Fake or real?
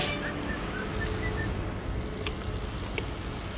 real